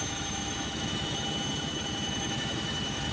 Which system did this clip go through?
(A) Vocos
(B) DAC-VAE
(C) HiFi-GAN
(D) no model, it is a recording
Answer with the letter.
B